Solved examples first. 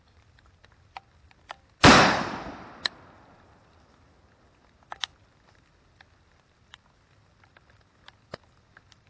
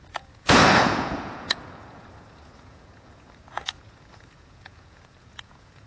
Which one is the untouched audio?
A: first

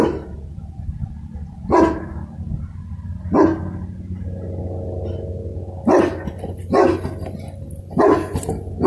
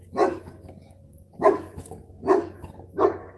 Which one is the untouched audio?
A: first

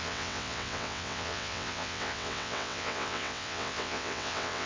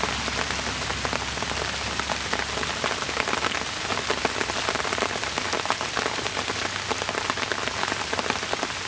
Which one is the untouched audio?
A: second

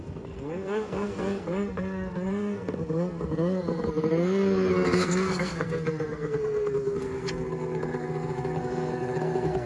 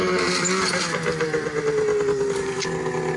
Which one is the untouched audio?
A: second